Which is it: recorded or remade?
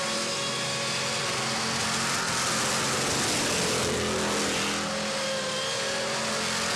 recorded